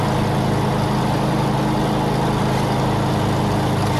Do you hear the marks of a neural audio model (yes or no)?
no